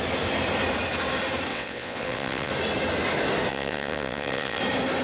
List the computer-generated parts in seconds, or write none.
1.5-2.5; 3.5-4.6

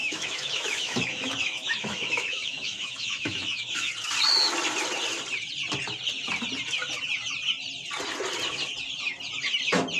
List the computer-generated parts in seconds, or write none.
0.0-3.9

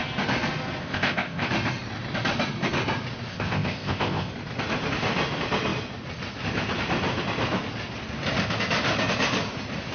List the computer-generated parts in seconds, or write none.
0.8-1.5; 3.3-4.3

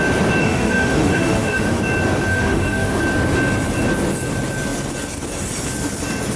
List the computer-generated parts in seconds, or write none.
0.4-1.8; 2.3-3.0

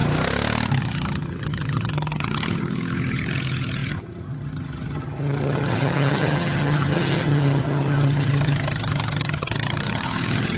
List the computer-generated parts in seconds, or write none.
0.8-10.6